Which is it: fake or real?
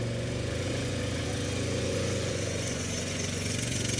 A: fake